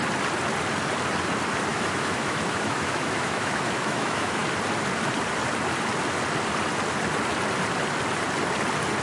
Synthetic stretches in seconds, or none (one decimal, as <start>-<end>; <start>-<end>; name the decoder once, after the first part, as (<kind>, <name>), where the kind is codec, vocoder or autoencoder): 1.7-4.4 (autoencoder, DAC-VAE)

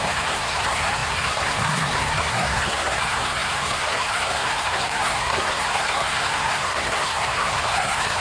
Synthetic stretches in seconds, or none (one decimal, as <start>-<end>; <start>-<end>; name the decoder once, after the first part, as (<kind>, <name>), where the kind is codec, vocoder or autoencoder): 0.0-8.2 (codec, SNAC)

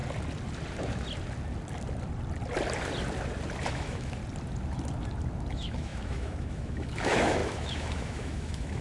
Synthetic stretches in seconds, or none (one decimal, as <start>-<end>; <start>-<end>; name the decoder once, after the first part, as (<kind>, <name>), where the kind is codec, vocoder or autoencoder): 3.7-4.2 (autoencoder, DAC-VAE); 5.5-8.8

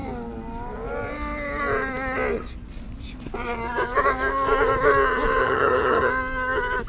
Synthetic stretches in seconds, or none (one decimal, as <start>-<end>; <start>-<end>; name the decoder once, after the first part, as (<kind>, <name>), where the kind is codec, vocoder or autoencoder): 5.4-6.1 (vocoder, HiFi-GAN)

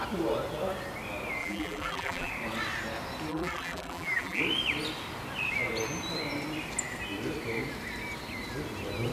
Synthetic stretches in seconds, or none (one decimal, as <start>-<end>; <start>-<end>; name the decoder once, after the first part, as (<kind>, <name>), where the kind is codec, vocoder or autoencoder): 1.4-2.3 (vocoder, BigVGAN v2); 3.3-4.4

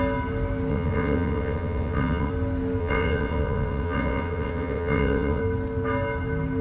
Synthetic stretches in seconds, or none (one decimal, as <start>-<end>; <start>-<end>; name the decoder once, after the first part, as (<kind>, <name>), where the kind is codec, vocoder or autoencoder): 0.7-2.3 (vocoder, WaveNeXt); 2.8-5.4

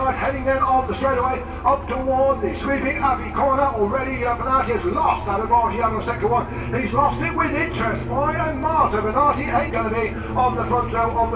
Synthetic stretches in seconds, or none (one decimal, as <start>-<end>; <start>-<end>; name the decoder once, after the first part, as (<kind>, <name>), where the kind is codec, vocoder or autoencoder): none

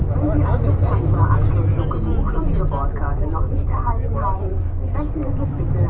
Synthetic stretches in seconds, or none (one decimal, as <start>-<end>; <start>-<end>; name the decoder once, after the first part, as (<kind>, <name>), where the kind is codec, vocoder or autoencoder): 4.5-5.1 (codec, DAC)